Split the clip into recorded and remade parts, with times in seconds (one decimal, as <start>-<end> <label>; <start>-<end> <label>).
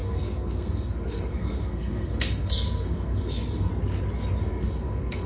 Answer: 0.0-3.7 remade; 3.7-4.4 recorded; 4.4-5.3 remade